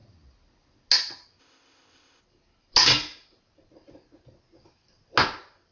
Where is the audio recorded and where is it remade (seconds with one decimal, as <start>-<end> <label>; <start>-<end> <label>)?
0.0-1.4 recorded; 1.4-2.2 remade; 2.2-5.7 recorded